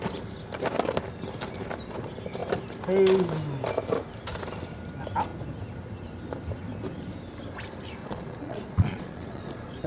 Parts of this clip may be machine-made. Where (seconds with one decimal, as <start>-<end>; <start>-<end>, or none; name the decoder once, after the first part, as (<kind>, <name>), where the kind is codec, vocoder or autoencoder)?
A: 8.0-9.9 (vocoder, Vocos)